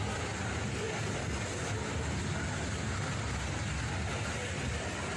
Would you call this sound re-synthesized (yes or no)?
no